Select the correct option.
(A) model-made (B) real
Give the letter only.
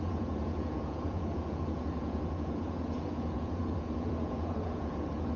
A